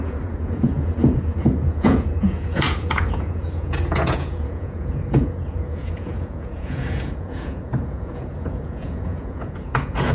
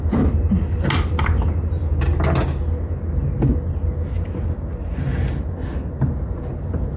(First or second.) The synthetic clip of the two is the first